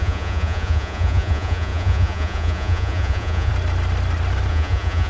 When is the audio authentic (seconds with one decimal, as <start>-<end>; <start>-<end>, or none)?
3.5-4.5